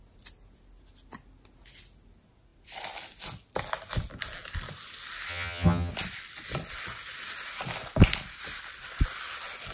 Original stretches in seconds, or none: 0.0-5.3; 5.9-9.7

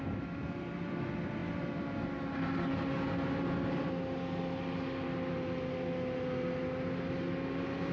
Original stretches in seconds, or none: 0.0-7.9

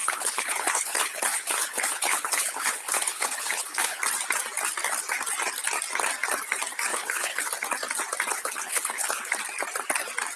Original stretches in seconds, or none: 4.0-6.9; 7.5-8.3; 9.3-10.4

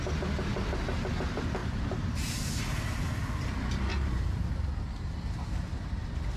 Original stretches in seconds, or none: 0.0-1.6; 2.5-3.9; 4.5-6.4